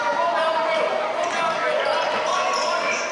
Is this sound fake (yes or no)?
no